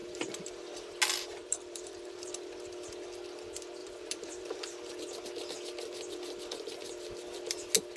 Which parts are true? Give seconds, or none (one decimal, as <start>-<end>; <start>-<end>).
0.6-1.4; 2.3-3.8; 4.9-8.0